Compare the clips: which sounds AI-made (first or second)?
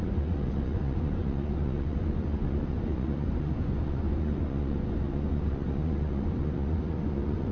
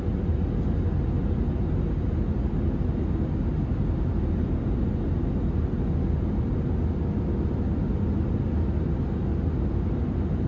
first